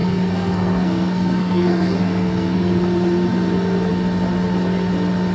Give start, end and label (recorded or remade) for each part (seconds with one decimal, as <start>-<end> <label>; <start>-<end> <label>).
0.0-2.8 remade; 2.8-5.3 recorded